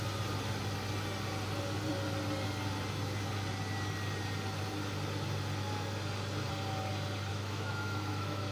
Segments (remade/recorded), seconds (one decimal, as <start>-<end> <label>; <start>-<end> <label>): 0.0-7.3 recorded; 7.3-8.5 remade